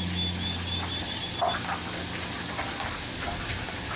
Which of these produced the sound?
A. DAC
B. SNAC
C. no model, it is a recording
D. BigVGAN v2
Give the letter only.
C